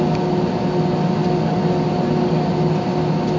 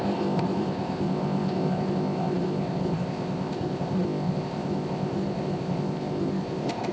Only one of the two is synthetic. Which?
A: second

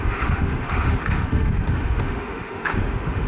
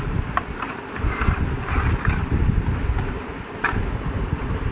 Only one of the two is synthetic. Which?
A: first